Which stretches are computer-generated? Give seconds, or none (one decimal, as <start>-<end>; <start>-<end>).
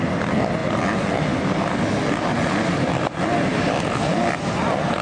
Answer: none